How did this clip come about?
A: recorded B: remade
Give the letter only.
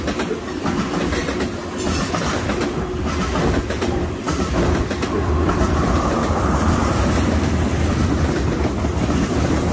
A